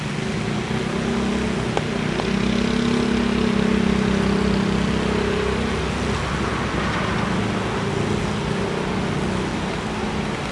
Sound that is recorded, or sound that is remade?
recorded